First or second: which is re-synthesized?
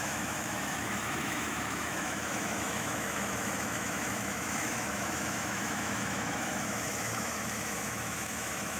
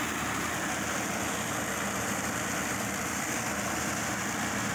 first